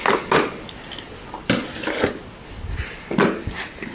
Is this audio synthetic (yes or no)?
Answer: no